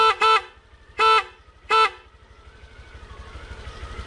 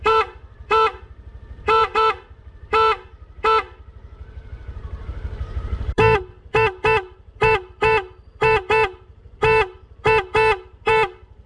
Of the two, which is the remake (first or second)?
second